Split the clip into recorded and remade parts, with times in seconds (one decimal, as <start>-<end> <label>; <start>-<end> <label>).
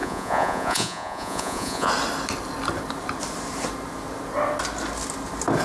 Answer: 0.0-1.9 remade; 1.9-5.6 recorded